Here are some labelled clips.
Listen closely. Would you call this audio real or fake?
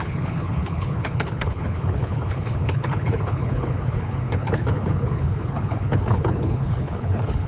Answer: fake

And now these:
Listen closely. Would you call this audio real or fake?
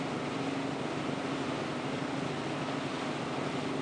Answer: real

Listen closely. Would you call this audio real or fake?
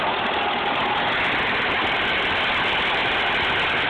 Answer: real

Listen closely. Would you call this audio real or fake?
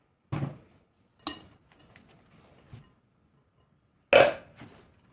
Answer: real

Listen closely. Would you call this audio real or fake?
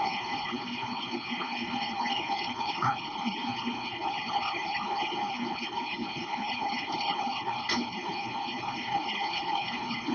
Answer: fake